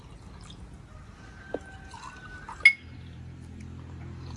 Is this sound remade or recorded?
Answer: recorded